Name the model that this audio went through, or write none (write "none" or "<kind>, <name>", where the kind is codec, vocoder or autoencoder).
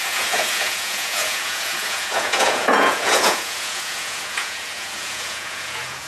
vocoder, Vocos